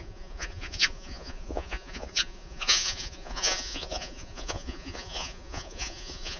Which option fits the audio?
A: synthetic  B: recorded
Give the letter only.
A